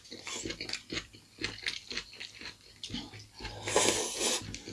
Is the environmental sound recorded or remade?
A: recorded